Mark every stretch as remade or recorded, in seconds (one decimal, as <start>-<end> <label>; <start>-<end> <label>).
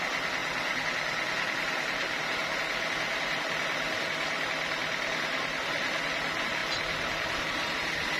0.0-6.6 recorded; 6.6-7.4 remade; 7.4-8.2 recorded